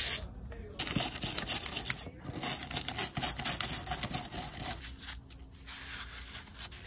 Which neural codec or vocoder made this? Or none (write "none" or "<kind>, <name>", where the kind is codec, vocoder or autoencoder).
none